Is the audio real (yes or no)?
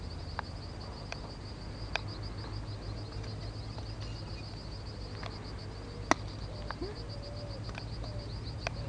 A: yes